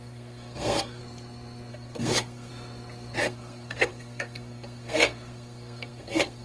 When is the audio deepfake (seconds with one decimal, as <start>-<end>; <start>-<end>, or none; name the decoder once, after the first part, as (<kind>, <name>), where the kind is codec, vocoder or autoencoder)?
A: 0.0-1.0 (codec, SNAC); 1.7-2.5; 3.2-6.4